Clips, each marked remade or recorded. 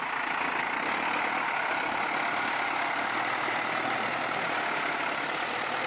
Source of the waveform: recorded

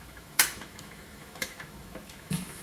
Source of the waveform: remade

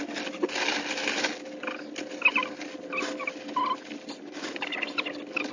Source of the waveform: recorded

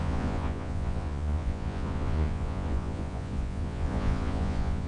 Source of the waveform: remade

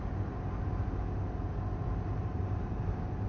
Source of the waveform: recorded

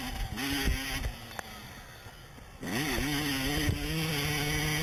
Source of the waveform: recorded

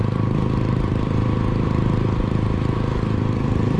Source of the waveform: remade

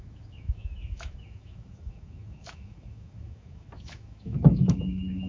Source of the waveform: remade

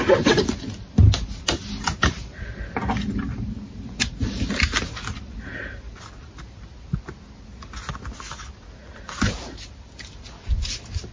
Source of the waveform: recorded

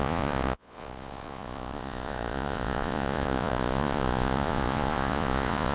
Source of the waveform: remade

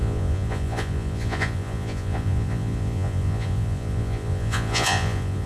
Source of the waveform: remade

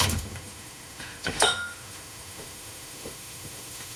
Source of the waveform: remade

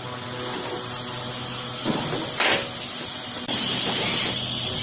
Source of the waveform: recorded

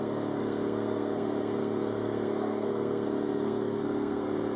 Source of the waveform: remade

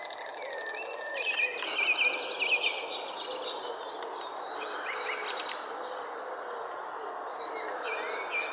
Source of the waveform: recorded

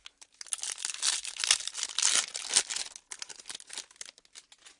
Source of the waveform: recorded